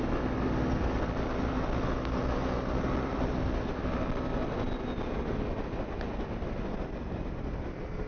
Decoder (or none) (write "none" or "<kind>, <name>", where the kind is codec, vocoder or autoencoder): none